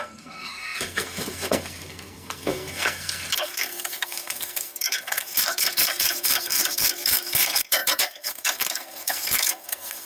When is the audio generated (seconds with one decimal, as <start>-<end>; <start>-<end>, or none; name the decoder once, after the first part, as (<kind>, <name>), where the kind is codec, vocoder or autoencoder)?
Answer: 0.0-10.1 (codec, SNAC)